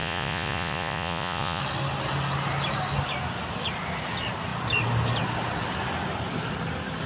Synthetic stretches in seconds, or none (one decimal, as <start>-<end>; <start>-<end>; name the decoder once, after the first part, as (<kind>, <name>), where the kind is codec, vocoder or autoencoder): 0.0-1.6 (vocoder, Vocos)